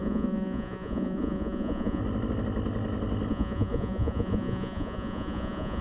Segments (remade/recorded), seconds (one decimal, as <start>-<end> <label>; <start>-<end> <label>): 0.0-2.0 remade; 2.0-3.3 recorded; 3.3-5.8 remade